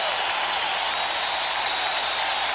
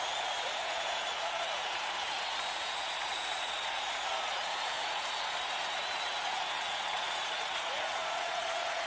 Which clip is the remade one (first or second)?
second